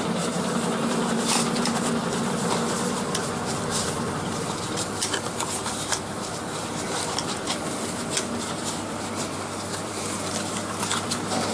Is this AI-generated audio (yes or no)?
yes